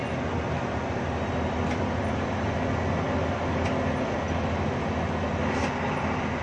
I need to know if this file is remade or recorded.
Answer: recorded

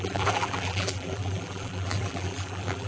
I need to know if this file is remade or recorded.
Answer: remade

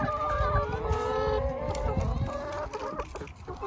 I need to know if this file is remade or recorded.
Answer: recorded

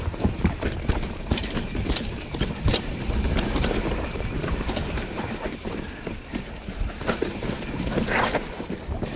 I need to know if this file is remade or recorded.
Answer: remade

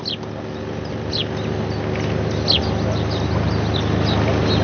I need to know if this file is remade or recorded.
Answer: recorded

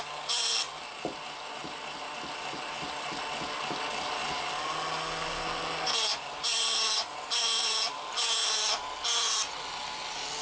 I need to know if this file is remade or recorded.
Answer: recorded